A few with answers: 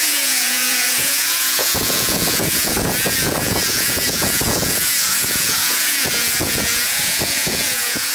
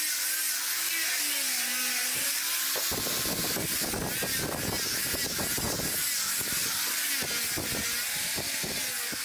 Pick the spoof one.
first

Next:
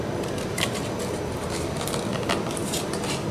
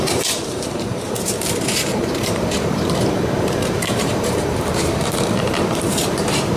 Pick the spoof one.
second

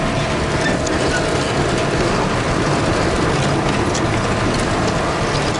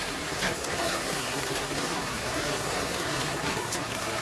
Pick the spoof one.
second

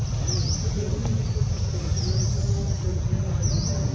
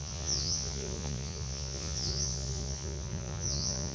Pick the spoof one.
second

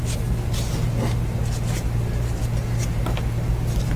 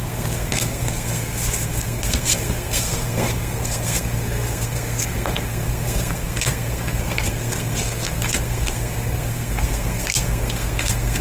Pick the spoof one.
second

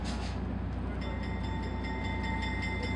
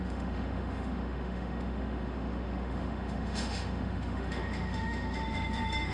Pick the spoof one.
second